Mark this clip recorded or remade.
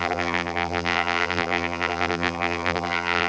remade